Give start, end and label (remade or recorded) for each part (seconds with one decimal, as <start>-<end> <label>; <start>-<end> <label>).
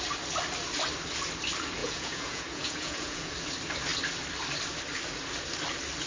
0.0-1.8 recorded; 1.8-3.3 remade; 3.3-6.1 recorded